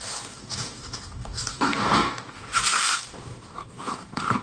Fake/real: fake